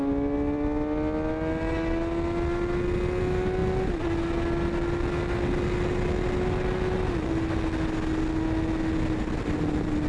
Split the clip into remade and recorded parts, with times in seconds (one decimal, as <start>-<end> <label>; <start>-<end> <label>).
0.0-10.1 recorded